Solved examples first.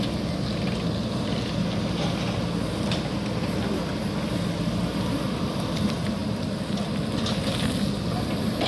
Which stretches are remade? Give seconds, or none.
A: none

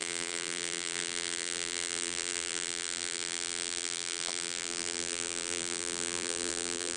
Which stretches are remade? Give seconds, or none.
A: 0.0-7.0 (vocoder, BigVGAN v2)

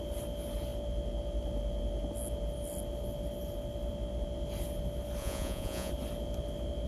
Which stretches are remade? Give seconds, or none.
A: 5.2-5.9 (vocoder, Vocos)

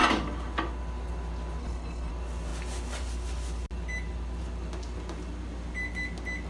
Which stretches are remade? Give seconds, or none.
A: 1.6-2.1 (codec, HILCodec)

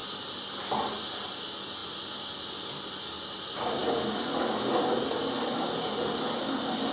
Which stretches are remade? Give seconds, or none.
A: 1.8-2.9 (vocoder, BigVGAN v2); 3.8-4.4

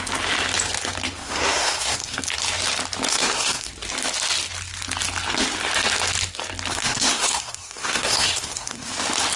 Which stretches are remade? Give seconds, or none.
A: 1.2-2.2 (codec, SNAC); 3.1-3.7; 6.7-8.9